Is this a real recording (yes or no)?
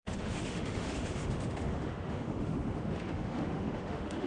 no